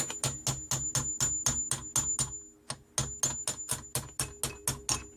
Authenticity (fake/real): real